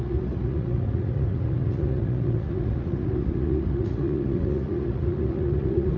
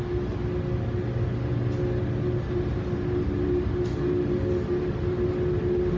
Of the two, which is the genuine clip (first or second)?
second